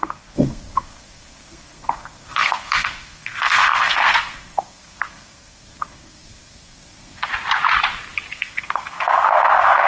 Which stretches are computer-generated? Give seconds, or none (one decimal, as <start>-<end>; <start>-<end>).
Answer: 0.0-7.3; 8.3-9.9